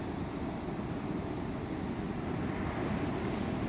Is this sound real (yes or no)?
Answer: yes